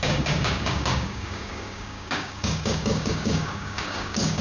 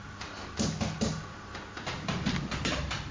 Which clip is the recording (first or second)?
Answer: second